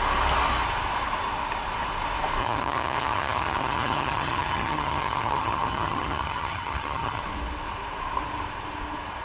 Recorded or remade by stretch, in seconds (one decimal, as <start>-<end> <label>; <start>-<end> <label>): 0.0-2.4 recorded; 2.4-7.2 remade; 7.2-9.2 recorded